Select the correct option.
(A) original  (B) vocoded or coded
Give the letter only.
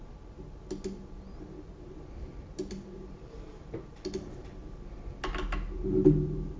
A